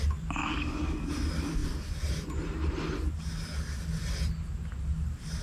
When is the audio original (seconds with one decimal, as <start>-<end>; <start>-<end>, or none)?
0.0-0.4; 1.1-5.4